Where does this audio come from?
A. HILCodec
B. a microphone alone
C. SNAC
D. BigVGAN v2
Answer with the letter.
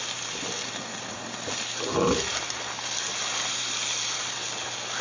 B